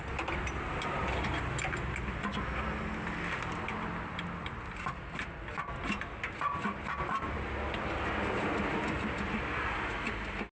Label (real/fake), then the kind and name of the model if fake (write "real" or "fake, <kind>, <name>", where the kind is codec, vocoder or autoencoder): real